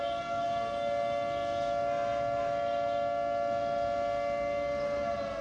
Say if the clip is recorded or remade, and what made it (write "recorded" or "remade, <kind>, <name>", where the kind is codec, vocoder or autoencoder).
recorded